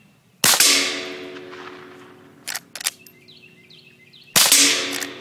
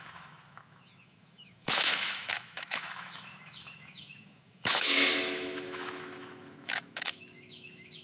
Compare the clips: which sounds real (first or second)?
first